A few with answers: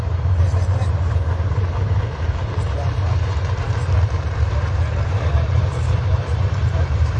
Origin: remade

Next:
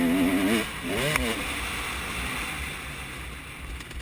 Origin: recorded